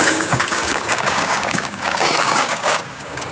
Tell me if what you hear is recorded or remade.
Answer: remade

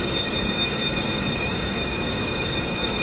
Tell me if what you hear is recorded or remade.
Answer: remade